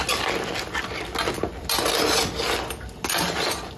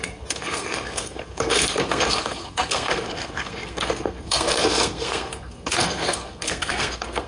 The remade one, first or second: second